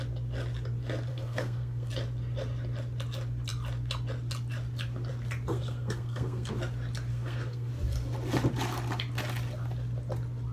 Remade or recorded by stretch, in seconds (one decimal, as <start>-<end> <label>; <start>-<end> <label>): 0.0-1.1 recorded; 1.1-1.9 remade; 1.9-5.5 recorded; 5.5-6.5 remade; 6.5-7.1 recorded; 7.1-7.7 remade; 7.7-10.5 recorded